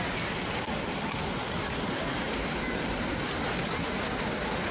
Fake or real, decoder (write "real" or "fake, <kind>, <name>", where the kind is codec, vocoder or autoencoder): real